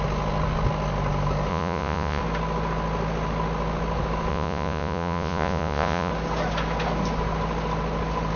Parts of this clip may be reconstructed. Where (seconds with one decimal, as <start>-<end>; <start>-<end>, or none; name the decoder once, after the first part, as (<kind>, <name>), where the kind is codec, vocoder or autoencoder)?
1.5-2.2 (vocoder, Vocos); 4.3-6.1